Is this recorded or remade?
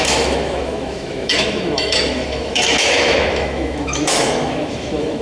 remade